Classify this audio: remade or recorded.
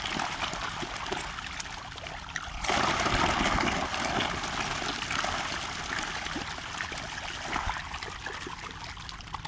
recorded